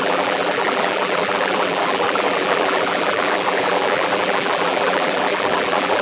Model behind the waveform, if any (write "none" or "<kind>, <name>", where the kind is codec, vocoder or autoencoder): vocoder, BigVGAN v2